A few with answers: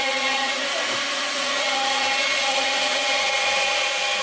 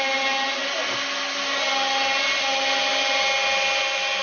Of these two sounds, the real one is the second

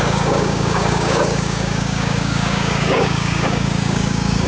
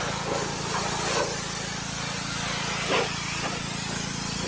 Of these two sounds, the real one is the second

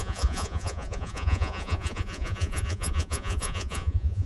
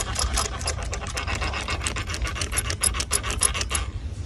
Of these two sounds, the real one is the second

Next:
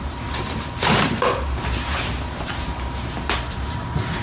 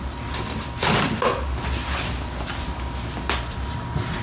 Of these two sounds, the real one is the second